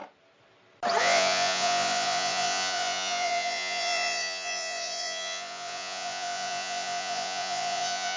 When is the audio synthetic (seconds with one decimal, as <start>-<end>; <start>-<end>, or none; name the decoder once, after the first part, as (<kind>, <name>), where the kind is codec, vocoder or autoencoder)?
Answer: 1.0-8.2 (vocoder, Vocos)